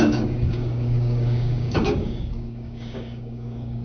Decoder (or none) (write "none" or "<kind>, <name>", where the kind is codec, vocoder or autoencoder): codec, DAC